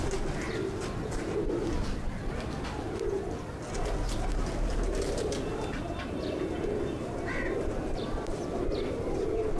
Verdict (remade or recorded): remade